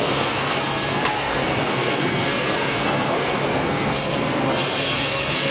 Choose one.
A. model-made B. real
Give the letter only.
A